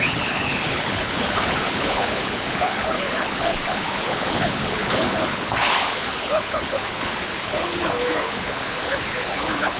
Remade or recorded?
remade